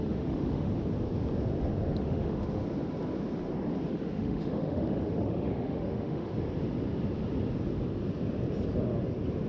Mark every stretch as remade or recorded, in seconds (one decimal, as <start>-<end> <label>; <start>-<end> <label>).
0.0-0.7 remade; 0.7-2.0 recorded; 2.0-2.6 remade; 2.6-3.9 recorded; 3.9-6.3 remade; 6.3-9.5 recorded